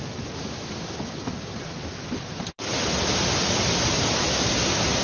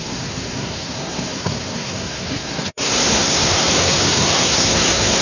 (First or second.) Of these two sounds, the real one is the first